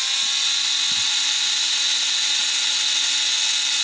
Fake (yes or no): no